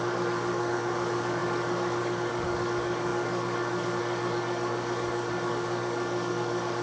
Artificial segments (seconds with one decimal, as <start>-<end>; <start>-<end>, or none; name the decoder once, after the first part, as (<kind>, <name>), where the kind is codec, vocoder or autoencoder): 0.0-6.8 (codec, DAC)